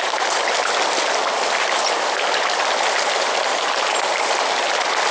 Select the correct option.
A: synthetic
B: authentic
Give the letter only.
B